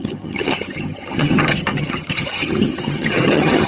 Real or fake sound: fake